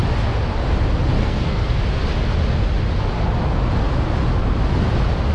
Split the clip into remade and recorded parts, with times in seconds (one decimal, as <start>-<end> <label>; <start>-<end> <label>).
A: 0.0-1.2 recorded; 1.2-1.8 remade; 1.8-5.3 recorded